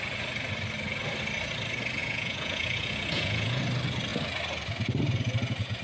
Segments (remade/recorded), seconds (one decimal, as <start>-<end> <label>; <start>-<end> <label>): 0.0-2.0 recorded; 2.0-3.6 remade; 3.6-5.8 recorded